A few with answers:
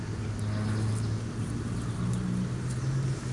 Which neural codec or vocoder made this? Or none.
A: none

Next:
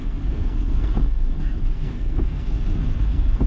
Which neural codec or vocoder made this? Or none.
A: codec, SNAC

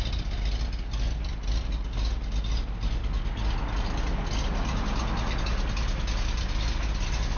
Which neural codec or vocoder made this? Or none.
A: none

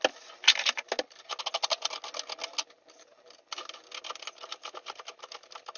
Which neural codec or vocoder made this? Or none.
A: none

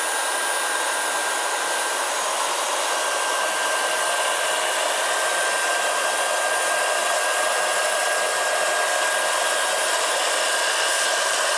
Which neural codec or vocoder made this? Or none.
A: none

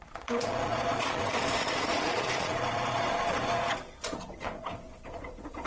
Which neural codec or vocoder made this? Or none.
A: vocoder, Vocos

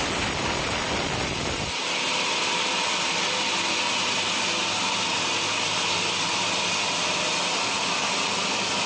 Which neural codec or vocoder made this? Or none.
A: none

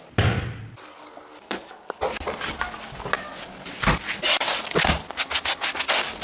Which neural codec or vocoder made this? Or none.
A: none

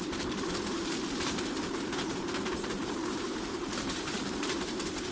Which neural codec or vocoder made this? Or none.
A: vocoder, BigVGAN v2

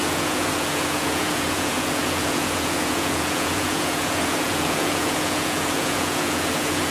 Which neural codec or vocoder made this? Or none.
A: vocoder, Vocos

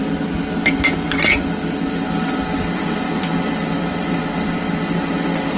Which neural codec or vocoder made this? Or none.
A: none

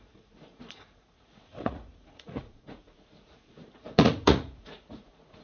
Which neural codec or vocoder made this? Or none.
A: vocoder, Vocos